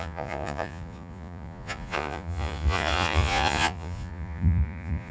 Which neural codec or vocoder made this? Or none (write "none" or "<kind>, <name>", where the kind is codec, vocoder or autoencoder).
vocoder, Vocos